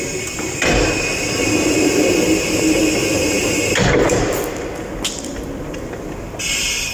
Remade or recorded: recorded